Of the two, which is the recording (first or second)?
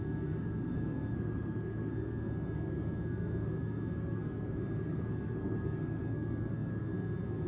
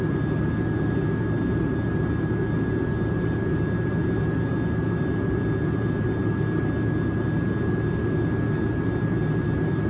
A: second